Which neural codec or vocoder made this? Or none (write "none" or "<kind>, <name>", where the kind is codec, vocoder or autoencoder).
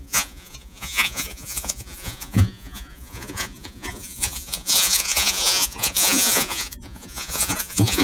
vocoder, Vocos